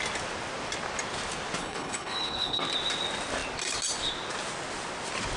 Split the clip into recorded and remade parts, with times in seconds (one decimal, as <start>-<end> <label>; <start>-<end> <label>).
0.0-1.6 recorded; 1.6-2.6 remade; 2.6-5.4 recorded